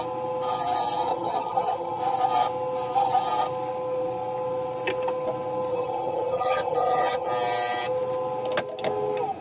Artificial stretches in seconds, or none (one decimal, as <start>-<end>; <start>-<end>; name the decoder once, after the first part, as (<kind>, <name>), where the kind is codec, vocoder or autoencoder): 1.1-2.0 (vocoder, HiFi-GAN); 5.7-7.3